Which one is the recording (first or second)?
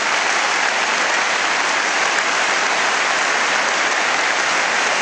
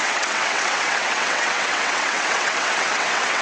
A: first